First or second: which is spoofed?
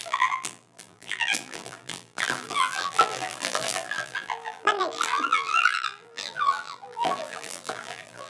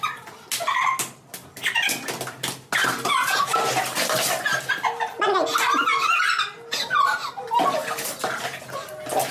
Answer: first